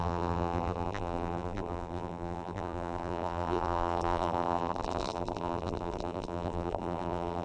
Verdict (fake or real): fake